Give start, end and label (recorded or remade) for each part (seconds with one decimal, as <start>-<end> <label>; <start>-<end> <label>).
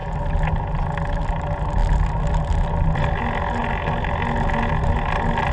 0.0-5.5 recorded